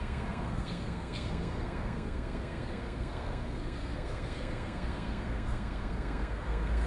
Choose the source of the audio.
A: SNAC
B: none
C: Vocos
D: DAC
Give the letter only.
A